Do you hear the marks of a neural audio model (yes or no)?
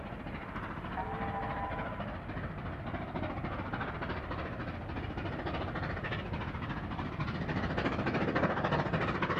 no